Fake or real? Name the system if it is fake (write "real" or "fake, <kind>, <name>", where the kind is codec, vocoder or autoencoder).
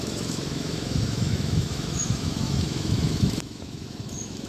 fake, autoencoder, DAC-VAE